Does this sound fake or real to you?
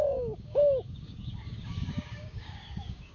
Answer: fake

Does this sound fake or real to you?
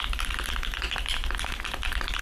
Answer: real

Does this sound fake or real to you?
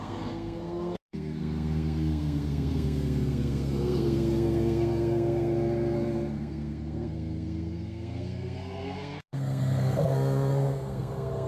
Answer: fake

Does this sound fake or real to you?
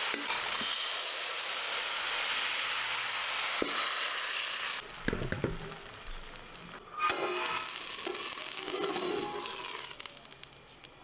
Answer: real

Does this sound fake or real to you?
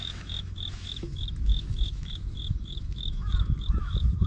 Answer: fake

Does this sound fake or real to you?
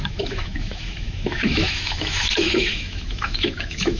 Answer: fake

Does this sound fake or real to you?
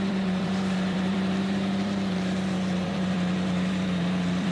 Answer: fake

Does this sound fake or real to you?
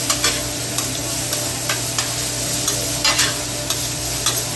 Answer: real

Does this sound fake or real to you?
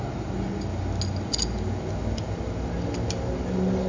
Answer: real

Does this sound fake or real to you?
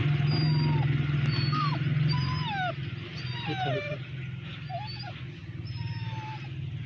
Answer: real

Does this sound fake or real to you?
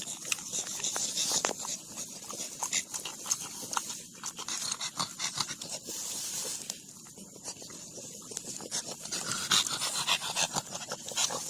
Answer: real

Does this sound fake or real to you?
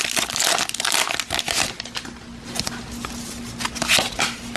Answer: real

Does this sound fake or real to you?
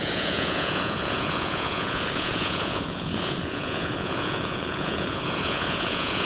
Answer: fake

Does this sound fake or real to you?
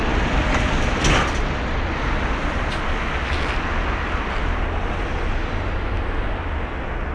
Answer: real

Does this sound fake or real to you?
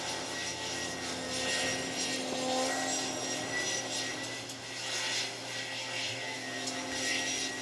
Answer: real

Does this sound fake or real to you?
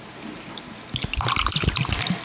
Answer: real